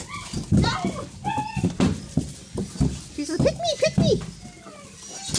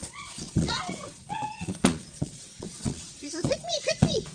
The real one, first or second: first